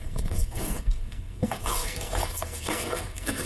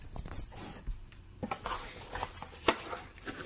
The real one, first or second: second